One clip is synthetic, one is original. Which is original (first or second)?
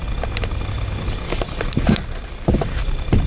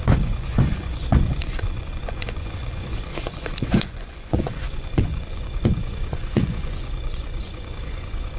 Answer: first